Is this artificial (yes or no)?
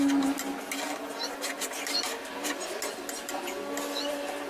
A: no